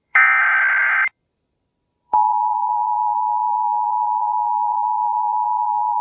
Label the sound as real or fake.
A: fake